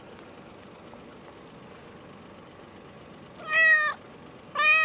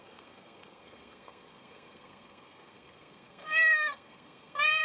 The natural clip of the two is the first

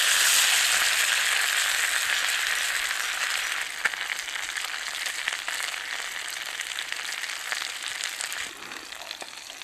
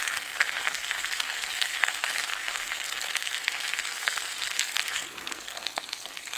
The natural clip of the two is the first